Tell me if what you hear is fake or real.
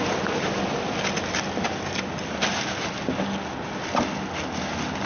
real